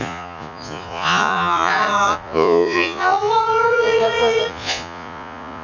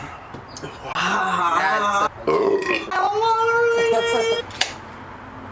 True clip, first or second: second